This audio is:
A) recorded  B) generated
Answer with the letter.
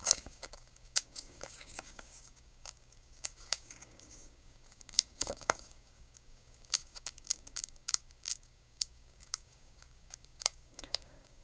B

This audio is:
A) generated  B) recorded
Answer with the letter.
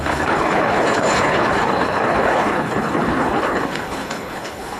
A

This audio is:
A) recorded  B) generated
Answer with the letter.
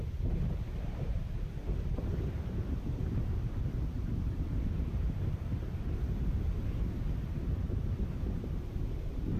A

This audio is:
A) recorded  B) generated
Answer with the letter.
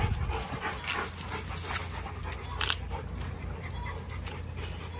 A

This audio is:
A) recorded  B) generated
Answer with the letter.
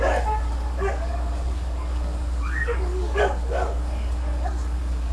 B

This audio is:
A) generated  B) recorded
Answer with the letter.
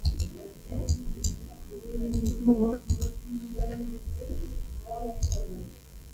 A